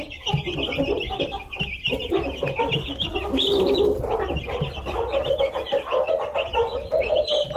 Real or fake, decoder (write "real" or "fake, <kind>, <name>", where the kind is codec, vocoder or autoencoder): fake, vocoder, BigVGAN v2